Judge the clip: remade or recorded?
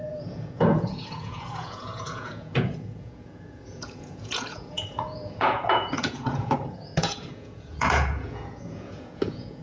remade